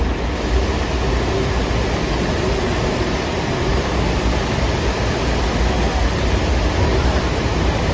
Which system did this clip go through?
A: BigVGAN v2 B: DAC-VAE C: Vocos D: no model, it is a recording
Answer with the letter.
D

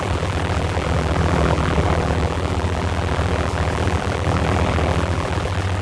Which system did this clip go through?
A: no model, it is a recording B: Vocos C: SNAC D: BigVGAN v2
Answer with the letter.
D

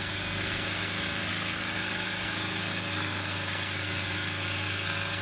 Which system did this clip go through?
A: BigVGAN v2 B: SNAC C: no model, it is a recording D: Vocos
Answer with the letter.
B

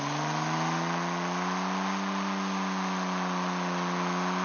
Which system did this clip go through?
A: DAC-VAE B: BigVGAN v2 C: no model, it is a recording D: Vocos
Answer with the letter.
C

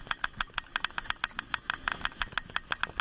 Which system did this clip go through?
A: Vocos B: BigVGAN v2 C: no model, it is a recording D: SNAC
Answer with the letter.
C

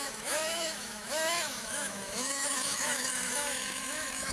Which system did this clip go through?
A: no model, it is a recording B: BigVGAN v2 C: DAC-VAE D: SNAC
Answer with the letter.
C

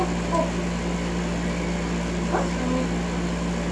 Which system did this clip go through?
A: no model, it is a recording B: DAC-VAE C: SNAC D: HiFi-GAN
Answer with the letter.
A